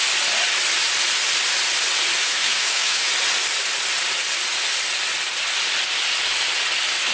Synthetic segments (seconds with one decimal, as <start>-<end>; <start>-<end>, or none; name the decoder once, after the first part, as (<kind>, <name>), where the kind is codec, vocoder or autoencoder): 2.2-3.1 (autoencoder, DAC-VAE)